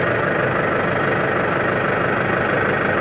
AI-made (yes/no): no